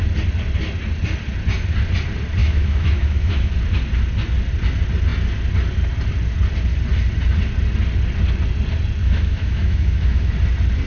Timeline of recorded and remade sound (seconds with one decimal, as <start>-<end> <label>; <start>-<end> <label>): 0.0-2.4 recorded; 2.4-3.5 remade; 3.5-9.0 recorded; 9.0-10.3 remade; 10.3-10.9 recorded